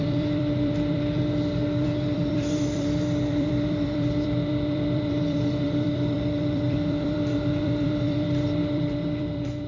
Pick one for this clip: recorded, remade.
remade